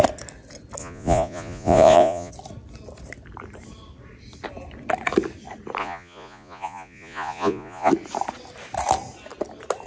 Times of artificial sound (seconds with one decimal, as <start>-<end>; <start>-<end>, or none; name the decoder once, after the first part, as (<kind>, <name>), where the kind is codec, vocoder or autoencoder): 0.8-2.3 (vocoder, Vocos); 5.8-7.9